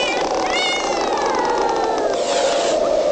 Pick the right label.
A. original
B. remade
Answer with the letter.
A